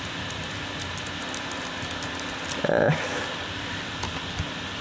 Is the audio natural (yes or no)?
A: yes